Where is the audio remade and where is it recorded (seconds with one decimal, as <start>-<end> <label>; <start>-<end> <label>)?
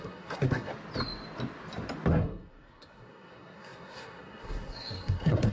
0.0-0.7 remade; 0.7-2.1 recorded; 2.1-5.5 remade